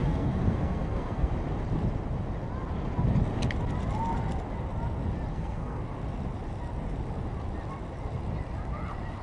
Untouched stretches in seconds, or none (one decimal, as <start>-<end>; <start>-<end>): 1.3-5.3; 5.8-9.2